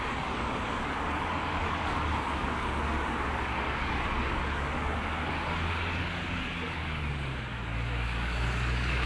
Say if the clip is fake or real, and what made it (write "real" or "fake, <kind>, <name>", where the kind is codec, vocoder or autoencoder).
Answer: fake, codec, DAC